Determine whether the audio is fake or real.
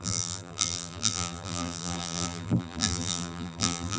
fake